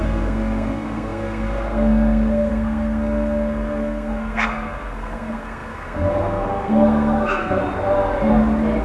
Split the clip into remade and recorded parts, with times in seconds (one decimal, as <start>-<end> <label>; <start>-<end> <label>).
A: 0.0-7.6 remade; 7.6-8.8 recorded

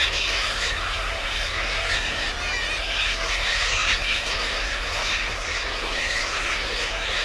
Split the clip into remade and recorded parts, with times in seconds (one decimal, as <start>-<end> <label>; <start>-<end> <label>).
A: 0.0-2.3 remade; 2.3-2.8 recorded; 2.8-7.2 remade

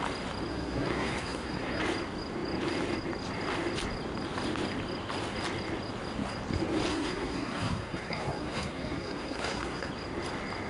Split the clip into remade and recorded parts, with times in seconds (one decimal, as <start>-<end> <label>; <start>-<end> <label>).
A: 0.0-0.5 recorded; 0.5-1.8 remade; 1.8-6.9 recorded; 6.9-9.9 remade; 9.9-10.7 recorded

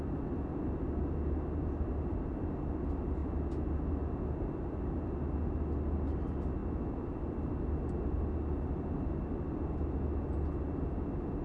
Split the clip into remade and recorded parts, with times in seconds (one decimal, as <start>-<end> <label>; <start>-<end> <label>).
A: 0.0-11.4 recorded

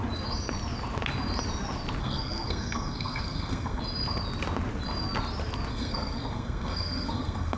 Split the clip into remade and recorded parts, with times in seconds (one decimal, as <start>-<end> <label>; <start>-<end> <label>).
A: 0.0-2.0 recorded; 2.0-3.8 remade; 3.8-5.7 recorded; 5.7-7.6 remade

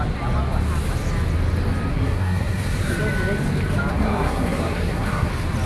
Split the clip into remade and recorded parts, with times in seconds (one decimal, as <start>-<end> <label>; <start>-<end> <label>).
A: 0.0-1.9 recorded; 1.9-3.0 remade; 3.0-3.9 recorded; 3.9-5.3 remade; 5.3-5.7 recorded

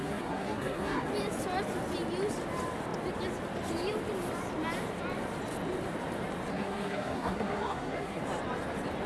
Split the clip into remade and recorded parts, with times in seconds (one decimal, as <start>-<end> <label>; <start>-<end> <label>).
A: 0.0-1.1 remade; 1.1-6.5 recorded; 6.5-8.2 remade; 8.2-9.1 recorded